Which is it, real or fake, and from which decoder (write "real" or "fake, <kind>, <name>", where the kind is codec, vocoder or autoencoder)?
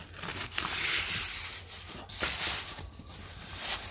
real